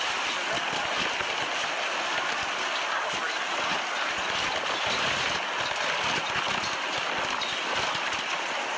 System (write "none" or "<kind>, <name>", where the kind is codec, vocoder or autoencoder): none